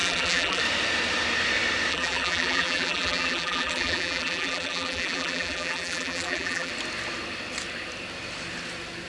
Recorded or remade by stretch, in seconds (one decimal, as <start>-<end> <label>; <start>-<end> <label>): 0.0-0.6 remade; 0.6-1.9 recorded; 1.9-6.7 remade; 6.7-9.1 recorded

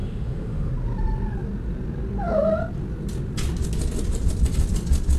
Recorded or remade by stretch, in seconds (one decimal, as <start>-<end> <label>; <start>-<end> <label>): 0.0-0.7 remade; 0.7-5.2 recorded

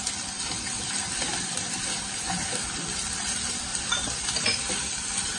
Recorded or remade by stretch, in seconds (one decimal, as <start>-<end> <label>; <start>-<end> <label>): 0.0-1.2 recorded; 1.2-3.1 remade; 3.1-3.7 recorded; 3.7-5.4 remade

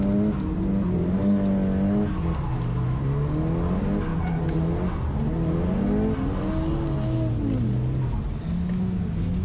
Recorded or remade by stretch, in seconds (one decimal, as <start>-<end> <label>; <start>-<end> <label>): 0.0-9.4 recorded

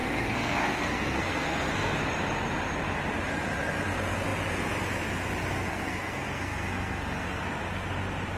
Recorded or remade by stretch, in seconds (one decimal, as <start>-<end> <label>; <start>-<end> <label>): 0.0-2.0 remade; 2.0-5.7 recorded; 5.7-7.4 remade; 7.4-8.4 recorded

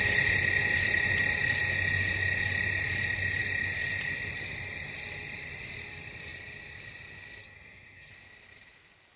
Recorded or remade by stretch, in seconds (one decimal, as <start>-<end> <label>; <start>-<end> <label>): 0.0-7.4 recorded; 7.4-8.1 remade; 8.1-9.2 recorded

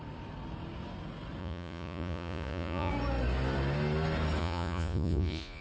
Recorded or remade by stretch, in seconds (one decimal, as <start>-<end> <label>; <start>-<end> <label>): 0.0-1.4 recorded; 1.4-2.9 remade; 2.9-4.4 recorded; 4.4-5.6 remade

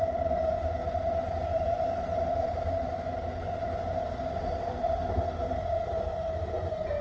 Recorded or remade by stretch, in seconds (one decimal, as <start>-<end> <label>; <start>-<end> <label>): 0.0-1.5 recorded; 1.5-2.8 remade; 2.8-7.0 recorded